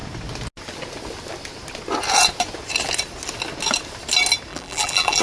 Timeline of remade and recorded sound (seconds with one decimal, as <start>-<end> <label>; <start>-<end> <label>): 0.0-4.5 recorded; 4.5-5.2 remade